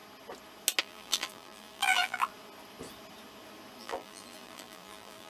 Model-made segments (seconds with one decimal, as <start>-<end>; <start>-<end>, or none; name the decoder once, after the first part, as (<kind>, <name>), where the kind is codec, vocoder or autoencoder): 0.8-2.3 (vocoder, BigVGAN v2); 3.8-5.3